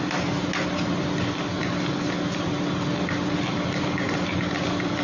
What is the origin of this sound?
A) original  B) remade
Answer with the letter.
A